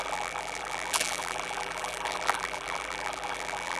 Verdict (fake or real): fake